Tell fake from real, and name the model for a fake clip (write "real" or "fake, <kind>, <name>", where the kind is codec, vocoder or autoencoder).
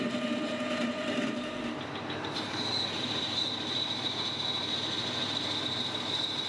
fake, vocoder, BigVGAN v2